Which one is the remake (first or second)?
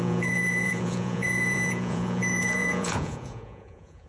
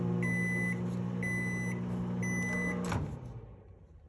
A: first